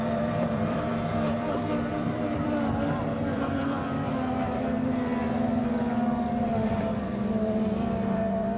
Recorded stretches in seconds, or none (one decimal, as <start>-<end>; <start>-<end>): 5.1-6.3